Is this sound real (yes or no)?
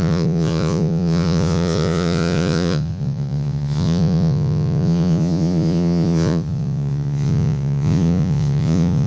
no